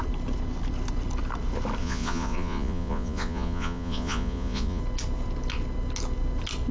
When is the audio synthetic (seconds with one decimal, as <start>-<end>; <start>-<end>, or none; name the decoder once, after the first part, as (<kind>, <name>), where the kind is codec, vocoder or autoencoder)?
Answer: 1.8-4.8 (vocoder, Vocos)